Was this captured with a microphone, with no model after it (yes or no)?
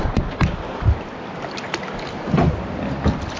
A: yes